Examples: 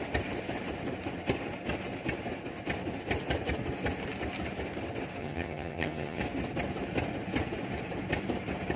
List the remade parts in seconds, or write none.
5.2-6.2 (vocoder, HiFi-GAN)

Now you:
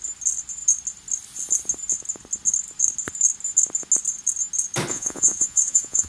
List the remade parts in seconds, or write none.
4.9-6.1 (vocoder, Vocos)